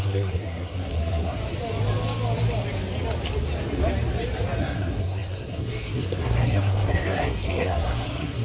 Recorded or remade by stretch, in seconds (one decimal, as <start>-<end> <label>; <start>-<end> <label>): 0.0-1.4 remade; 1.4-4.6 recorded; 4.6-8.4 remade